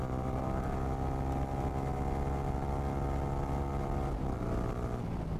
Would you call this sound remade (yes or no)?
no